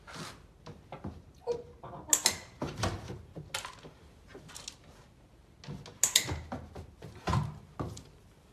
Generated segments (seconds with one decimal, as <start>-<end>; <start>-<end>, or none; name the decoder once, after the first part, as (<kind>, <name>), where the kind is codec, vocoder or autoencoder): none

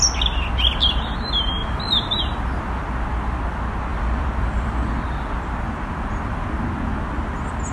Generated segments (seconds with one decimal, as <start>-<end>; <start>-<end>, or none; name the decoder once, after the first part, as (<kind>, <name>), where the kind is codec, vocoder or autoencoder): 1.6-2.2 (vocoder, BigVGAN v2); 3.9-5.0

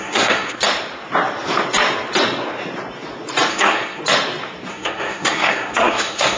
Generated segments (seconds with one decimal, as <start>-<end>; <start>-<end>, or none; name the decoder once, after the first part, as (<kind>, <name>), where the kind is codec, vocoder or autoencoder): 0.0-0.6 (codec, SNAC); 3.5-4.0; 4.7-6.4

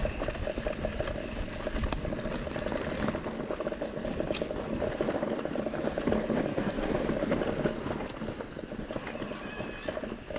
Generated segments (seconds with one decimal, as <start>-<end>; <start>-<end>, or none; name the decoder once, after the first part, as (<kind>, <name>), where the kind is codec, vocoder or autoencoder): 6.5-7.0 (codec, SNAC)

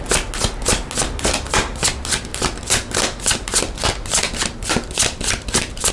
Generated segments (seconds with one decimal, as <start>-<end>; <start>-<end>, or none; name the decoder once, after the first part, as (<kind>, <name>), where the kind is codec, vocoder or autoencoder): 2.3-5.9 (vocoder, BigVGAN v2)